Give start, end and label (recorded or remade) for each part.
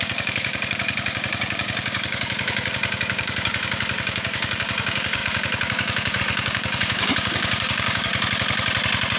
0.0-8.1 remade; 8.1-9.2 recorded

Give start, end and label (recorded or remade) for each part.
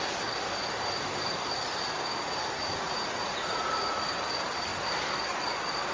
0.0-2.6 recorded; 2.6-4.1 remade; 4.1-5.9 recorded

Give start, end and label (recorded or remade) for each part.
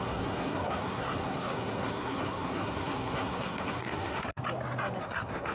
0.0-4.4 remade; 4.4-5.0 recorded; 5.0-5.5 remade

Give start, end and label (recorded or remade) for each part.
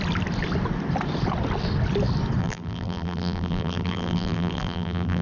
0.0-2.4 recorded; 2.4-5.2 remade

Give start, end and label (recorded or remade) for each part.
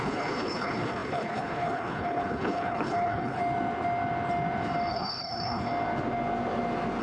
0.0-3.4 remade; 3.4-4.9 recorded; 4.9-5.7 remade; 5.7-7.0 recorded